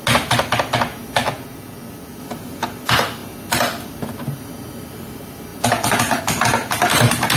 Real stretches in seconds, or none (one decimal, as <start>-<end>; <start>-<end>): 0.0-1.2; 2.2-5.5; 6.2-7.4